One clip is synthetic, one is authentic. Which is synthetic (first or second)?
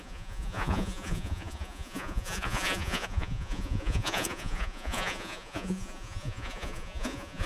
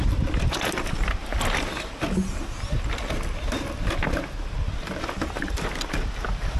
first